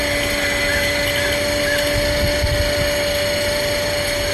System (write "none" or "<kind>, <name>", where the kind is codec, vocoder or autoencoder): none